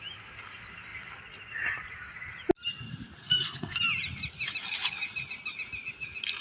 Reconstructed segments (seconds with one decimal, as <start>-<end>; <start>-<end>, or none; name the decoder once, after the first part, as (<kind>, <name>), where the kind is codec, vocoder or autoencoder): 3.2-3.8 (codec, SNAC)